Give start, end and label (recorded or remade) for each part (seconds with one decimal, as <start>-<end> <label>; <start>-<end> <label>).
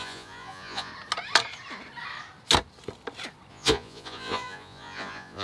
0.0-0.9 remade; 0.9-3.5 recorded; 3.5-5.4 remade